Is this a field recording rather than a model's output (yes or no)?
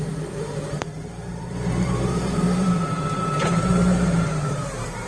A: no